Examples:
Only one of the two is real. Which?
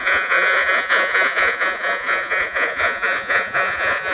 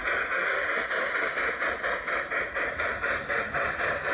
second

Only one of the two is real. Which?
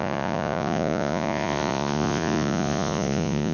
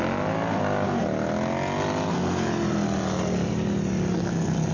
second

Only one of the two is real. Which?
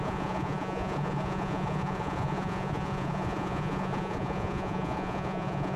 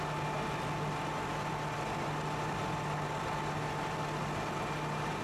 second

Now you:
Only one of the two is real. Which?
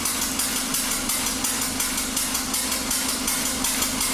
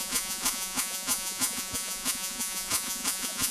first